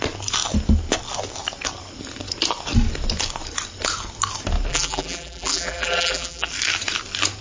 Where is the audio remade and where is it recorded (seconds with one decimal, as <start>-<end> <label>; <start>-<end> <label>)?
0.0-4.7 recorded; 4.7-6.5 remade; 6.5-7.4 recorded